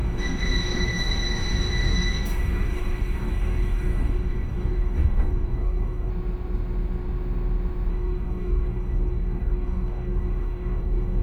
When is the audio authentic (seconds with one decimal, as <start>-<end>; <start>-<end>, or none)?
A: 6.1-7.9